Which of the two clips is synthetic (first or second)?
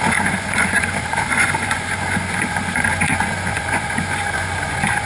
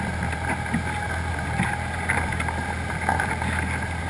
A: first